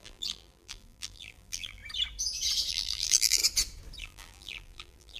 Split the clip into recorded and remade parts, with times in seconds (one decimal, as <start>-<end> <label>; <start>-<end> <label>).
0.0-1.8 remade; 1.8-2.7 recorded; 2.7-3.4 remade; 3.4-4.0 recorded; 4.0-5.2 remade